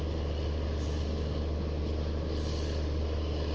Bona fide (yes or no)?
yes